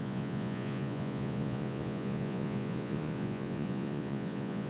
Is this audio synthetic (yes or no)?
yes